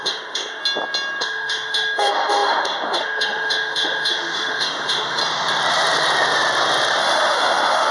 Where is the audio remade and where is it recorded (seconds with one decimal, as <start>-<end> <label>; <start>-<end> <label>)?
0.0-0.6 remade; 0.6-1.2 recorded; 1.2-5.2 remade; 5.2-7.0 recorded; 7.0-7.9 remade